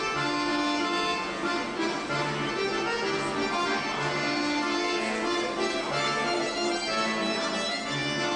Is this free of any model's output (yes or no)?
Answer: yes